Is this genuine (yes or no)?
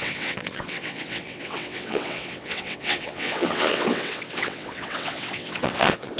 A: no